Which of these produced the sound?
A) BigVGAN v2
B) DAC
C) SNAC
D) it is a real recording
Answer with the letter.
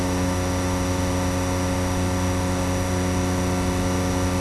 D